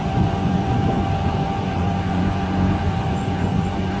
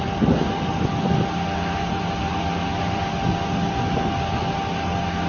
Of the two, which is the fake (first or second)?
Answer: first